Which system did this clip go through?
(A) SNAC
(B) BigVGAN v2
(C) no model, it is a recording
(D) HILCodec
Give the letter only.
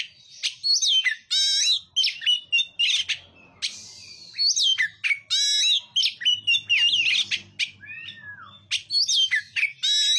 C